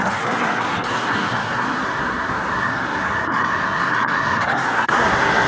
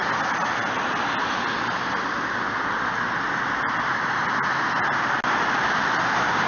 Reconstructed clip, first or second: first